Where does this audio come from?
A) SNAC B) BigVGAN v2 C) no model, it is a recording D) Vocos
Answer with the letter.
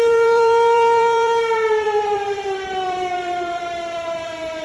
B